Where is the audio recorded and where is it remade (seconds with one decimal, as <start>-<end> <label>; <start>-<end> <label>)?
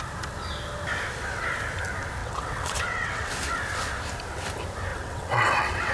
0.0-2.2 recorded; 2.2-3.3 remade; 3.3-4.9 recorded; 4.9-5.9 remade